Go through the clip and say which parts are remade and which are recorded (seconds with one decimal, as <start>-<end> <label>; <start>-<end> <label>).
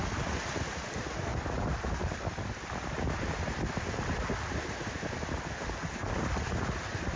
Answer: 0.0-7.2 recorded